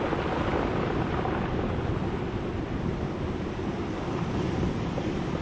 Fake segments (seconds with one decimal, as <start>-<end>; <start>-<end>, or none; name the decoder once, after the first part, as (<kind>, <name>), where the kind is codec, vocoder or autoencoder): none